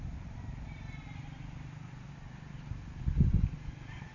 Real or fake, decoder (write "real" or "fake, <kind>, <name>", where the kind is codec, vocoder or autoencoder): real